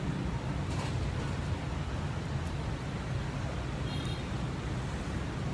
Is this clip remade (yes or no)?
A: no